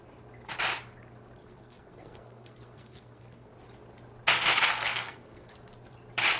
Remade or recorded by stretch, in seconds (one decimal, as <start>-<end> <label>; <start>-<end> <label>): 0.0-1.4 recorded; 1.4-3.5 remade; 3.5-4.7 recorded; 4.7-5.5 remade; 5.5-6.4 recorded